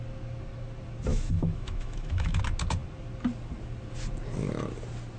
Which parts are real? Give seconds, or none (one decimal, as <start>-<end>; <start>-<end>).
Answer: 0.0-1.1; 2.4-5.2

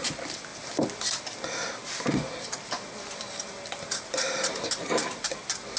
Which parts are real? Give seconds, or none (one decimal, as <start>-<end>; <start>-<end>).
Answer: 0.0-5.8

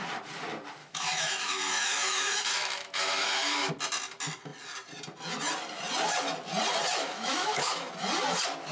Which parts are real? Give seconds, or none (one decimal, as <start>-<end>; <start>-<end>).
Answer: 0.0-0.8; 3.7-7.0; 7.9-8.7

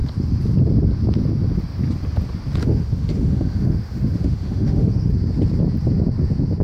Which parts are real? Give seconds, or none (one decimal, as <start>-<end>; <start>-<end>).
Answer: 0.0-2.6; 5.1-6.6

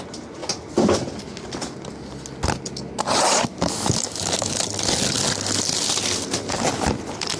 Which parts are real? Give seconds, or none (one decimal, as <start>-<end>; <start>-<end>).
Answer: 0.0-3.5; 4.5-7.4